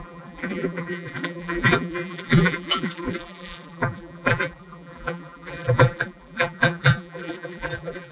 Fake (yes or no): yes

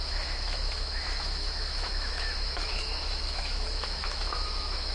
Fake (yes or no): yes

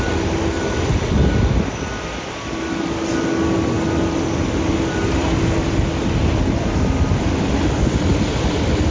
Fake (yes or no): no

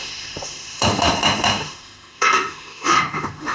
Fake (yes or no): yes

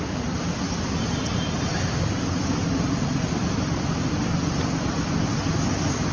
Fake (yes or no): no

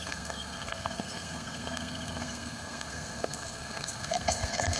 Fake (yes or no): yes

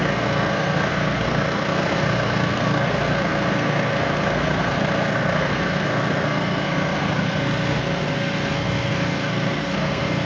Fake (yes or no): yes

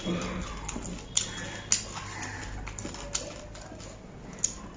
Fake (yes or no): no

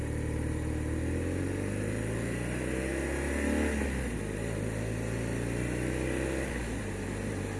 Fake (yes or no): no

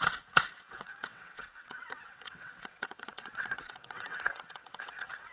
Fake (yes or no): yes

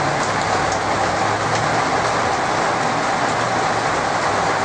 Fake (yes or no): no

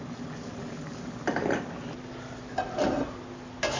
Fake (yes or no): no